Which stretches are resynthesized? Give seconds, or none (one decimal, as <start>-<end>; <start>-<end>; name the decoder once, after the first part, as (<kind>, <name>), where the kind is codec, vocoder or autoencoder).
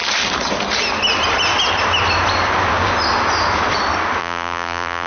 4.2-5.1 (vocoder, BigVGAN v2)